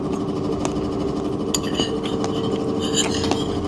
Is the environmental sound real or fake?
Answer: real